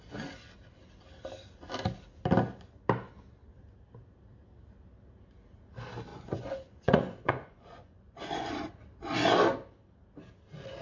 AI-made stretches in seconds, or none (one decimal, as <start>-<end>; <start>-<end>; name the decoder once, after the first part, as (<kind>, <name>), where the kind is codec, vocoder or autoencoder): 6.1-8.5 (vocoder, Vocos)